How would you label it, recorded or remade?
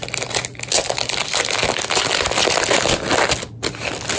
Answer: recorded